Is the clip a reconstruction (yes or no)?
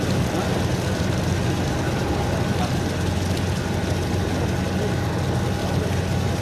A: no